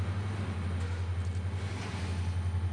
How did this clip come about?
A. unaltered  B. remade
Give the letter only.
A